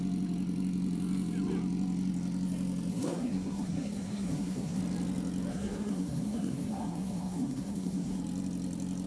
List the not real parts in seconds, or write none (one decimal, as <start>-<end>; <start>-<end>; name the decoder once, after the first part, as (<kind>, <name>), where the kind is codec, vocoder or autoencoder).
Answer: 2.9-4.8 (codec, SNAC); 5.5-8.2